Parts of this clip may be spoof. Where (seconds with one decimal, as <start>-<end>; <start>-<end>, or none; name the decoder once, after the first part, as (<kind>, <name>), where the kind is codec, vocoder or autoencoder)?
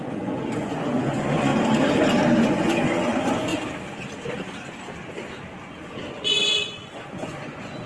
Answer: 0.0-1.5 (vocoder, Vocos); 2.4-3.5; 6.1-7.9